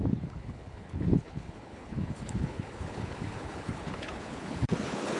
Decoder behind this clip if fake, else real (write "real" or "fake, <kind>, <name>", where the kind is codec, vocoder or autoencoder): fake, codec, HILCodec